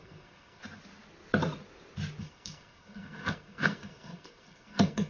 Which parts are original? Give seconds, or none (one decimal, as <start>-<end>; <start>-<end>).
0.6-2.2